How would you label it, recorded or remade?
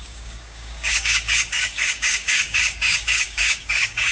remade